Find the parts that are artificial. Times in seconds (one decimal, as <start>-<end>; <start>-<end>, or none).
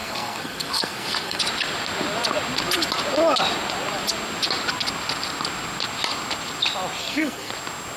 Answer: 0.0-1.4; 7.0-7.5